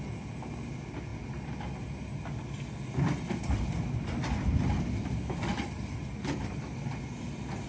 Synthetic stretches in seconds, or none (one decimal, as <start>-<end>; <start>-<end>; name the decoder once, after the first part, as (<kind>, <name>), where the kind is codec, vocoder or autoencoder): 5.5-6.9 (vocoder, BigVGAN v2)